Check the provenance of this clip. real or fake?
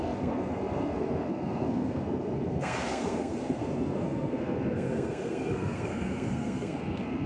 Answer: fake